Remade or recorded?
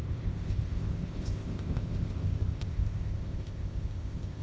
remade